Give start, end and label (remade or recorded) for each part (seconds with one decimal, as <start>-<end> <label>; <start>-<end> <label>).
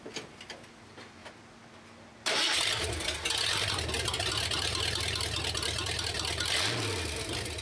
0.0-7.6 recorded